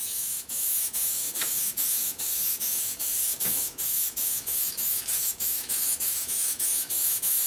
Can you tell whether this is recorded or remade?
remade